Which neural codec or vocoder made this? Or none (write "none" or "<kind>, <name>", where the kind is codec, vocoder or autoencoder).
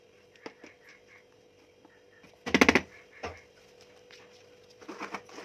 none